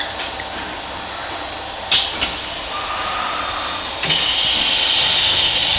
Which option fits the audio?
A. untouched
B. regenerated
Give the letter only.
A